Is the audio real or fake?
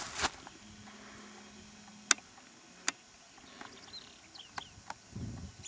real